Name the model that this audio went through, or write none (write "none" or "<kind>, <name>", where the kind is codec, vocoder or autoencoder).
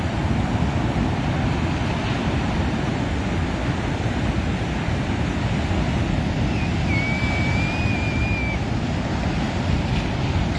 none